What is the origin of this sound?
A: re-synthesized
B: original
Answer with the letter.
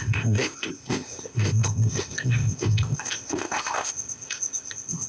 A